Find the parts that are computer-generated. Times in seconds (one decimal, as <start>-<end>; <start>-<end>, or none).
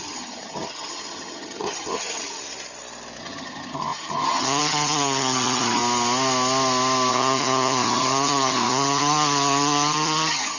0.0-2.4; 3.2-5.8; 7.1-10.6